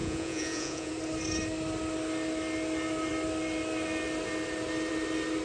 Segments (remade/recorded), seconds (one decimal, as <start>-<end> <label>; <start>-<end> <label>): 0.0-0.9 remade; 0.9-5.4 recorded